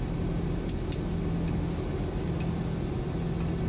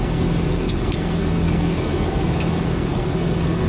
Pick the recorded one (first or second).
first